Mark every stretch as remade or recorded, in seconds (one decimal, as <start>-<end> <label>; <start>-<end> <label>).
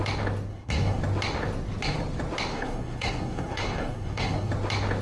0.0-0.5 recorded; 0.5-1.0 remade; 1.0-2.5 recorded; 2.5-4.5 remade; 4.5-5.0 recorded